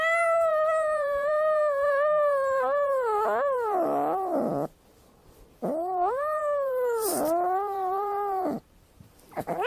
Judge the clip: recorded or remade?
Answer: remade